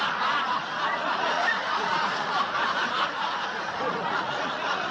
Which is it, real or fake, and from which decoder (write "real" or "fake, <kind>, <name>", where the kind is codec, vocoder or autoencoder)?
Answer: fake, vocoder, Vocos